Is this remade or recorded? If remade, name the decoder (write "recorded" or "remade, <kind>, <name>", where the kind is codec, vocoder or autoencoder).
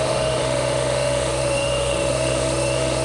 remade, autoencoder, DAC-VAE